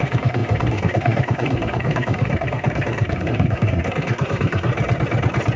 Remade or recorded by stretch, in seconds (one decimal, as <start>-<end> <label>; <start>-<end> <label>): 0.0-4.7 remade; 4.7-5.6 recorded